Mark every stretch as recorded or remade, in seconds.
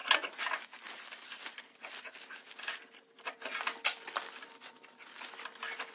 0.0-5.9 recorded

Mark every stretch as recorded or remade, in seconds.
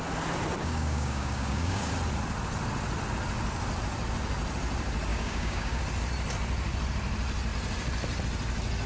0.0-0.6 recorded; 0.6-1.9 remade; 1.9-5.1 recorded; 5.1-5.8 remade; 5.8-8.9 recorded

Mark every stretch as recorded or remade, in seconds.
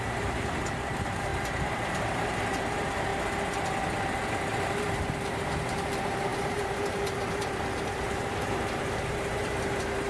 0.0-1.3 remade; 1.3-1.8 recorded; 1.8-3.1 remade; 3.1-4.7 recorded; 4.7-10.1 remade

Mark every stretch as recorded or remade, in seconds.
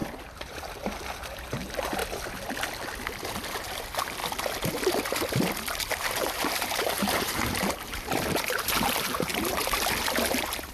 0.0-2.0 remade; 2.0-3.5 recorded; 3.5-4.2 remade; 4.2-5.9 recorded; 5.9-9.3 remade; 9.3-10.7 recorded